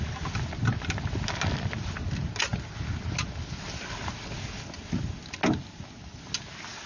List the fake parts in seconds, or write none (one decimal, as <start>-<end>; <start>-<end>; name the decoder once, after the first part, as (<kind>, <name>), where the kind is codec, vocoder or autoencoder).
none